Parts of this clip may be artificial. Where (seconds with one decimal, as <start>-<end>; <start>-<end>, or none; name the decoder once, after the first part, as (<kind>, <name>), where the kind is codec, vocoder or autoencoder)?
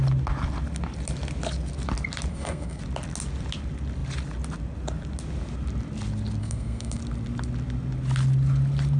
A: 2.3-2.8 (codec, SNAC); 6.4-7.0